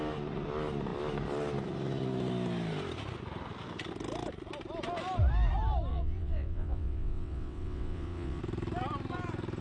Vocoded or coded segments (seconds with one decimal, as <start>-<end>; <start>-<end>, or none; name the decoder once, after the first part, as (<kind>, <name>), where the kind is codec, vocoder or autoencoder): 5.9-8.4 (vocoder, WaveNeXt)